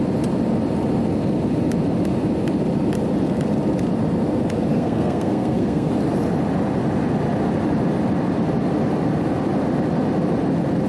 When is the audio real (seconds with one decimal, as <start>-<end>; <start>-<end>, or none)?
0.0-4.7; 5.9-10.9